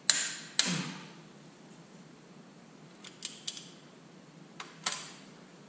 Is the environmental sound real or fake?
real